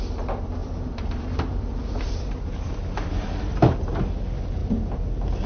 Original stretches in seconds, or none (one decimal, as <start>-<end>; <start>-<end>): 0.0-0.6; 3.9-5.5